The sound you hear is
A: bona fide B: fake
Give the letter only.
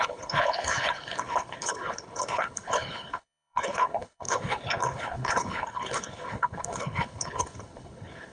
B